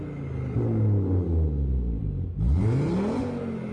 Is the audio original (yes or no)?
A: yes